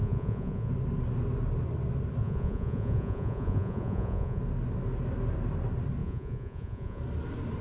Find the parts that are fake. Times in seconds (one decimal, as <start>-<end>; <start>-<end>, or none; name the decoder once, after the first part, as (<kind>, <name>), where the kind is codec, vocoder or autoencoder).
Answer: 0.0-0.7 (vocoder, Vocos); 2.2-4.4; 6.0-7.0